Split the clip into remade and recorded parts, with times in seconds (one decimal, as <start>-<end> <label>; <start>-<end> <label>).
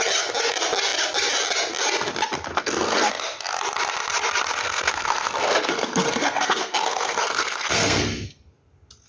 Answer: 0.0-2.5 recorded; 2.5-3.1 remade; 3.1-4.6 recorded; 4.6-8.5 remade; 8.5-9.1 recorded